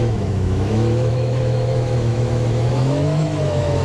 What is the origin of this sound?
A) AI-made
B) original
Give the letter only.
A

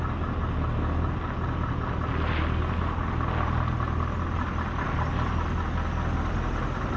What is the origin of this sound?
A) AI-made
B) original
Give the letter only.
B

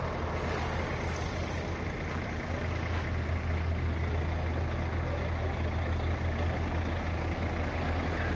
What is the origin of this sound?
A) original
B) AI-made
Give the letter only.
A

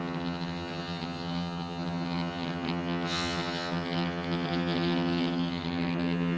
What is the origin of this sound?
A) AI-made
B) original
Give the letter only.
A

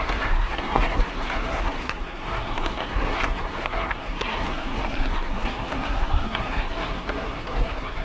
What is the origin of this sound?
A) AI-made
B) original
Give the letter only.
A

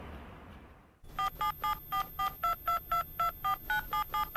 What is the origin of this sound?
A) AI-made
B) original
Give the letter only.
B